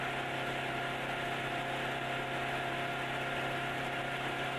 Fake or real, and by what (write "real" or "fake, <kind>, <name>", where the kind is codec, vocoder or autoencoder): real